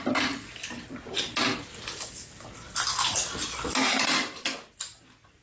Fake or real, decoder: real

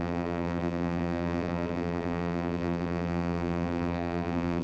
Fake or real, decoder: fake, vocoder, BigVGAN v2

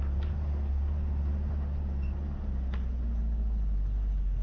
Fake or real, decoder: real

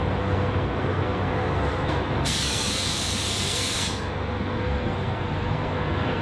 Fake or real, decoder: fake, codec, SNAC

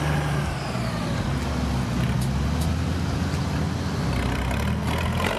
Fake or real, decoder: real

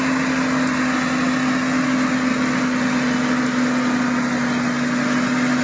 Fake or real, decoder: real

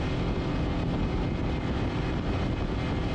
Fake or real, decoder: real